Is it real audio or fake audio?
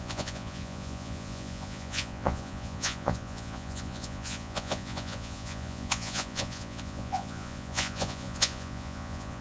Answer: fake